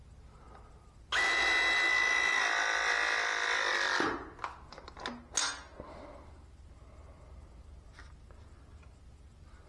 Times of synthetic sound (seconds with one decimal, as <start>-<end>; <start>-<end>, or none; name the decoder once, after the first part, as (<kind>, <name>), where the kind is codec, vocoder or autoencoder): none